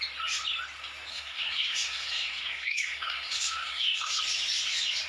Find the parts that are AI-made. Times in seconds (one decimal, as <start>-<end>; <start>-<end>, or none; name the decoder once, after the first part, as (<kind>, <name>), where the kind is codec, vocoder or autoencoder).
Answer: 1.1-4.2 (codec, SNAC)